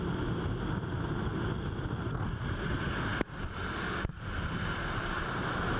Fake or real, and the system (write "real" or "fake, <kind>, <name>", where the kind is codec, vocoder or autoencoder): real